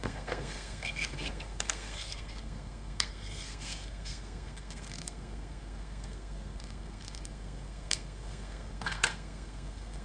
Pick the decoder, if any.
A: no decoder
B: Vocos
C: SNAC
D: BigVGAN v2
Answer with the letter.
C